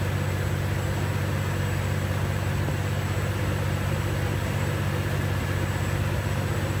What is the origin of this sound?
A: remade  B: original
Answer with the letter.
B